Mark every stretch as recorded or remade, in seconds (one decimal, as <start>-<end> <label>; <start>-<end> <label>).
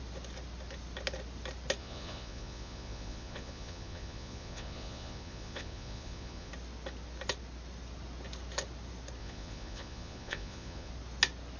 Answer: 0.0-1.8 recorded; 1.8-6.5 remade; 6.5-9.2 recorded; 9.2-10.9 remade; 10.9-11.6 recorded